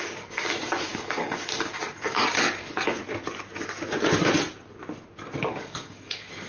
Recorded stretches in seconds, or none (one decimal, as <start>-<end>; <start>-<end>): 3.0-5.5

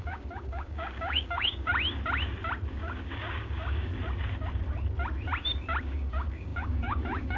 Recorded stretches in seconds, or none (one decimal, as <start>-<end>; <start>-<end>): 1.7-2.7; 3.9-5.8